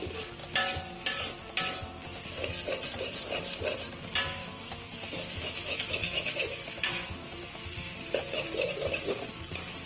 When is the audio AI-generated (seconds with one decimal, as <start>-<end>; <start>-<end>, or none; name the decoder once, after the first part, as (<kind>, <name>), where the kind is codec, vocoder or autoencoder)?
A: 4.4-7.9 (autoencoder, DAC-VAE)